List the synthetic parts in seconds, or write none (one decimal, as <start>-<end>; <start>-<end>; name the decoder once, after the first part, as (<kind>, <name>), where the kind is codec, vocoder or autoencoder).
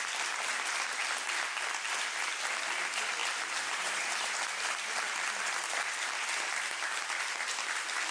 3.2-4.3 (vocoder, BigVGAN v2)